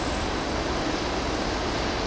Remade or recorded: recorded